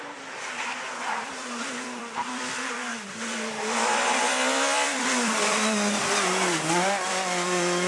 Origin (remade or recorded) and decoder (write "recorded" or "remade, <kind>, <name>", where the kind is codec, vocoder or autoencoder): remade, vocoder, BigVGAN v2